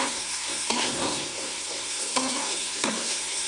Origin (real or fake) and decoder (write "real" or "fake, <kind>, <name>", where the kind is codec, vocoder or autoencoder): fake, codec, SNAC